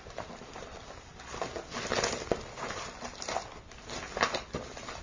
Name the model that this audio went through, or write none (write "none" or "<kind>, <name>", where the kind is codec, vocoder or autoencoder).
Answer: none